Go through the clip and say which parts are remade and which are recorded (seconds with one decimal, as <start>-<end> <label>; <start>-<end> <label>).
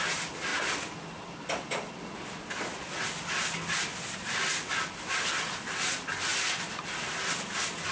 0.0-7.9 recorded